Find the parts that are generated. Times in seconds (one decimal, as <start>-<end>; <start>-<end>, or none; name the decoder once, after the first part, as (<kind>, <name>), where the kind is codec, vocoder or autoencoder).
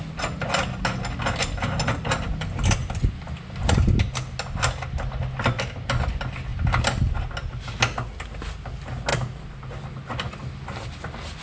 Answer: 2.8-3.7 (vocoder, BigVGAN v2)